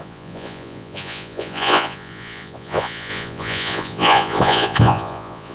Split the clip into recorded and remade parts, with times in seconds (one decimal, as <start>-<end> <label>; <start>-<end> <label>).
0.0-5.5 remade